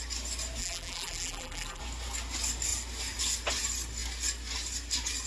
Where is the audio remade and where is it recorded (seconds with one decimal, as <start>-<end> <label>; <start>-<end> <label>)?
0.0-0.6 recorded; 0.6-1.8 remade; 1.8-5.3 recorded